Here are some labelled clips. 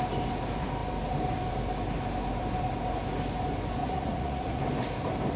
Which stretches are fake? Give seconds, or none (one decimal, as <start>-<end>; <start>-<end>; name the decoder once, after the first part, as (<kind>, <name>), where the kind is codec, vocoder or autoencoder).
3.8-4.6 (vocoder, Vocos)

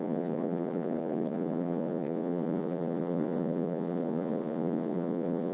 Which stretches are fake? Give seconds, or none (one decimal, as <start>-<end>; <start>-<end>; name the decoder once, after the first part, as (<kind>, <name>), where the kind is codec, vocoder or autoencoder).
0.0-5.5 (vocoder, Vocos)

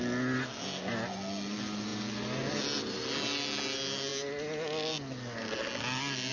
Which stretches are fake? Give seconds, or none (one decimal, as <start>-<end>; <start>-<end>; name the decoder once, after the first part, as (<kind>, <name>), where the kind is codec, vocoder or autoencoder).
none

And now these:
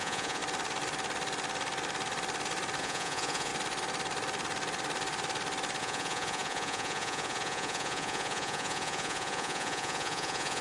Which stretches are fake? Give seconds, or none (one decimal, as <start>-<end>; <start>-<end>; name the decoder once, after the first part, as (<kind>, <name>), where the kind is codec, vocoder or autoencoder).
0.0-0.4 (vocoder, Vocos); 2.8-3.5; 5.8-10.6

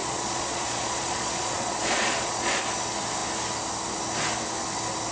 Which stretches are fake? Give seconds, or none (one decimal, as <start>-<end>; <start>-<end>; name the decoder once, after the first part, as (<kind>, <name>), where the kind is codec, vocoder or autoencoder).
0.0-2.6 (vocoder, Vocos)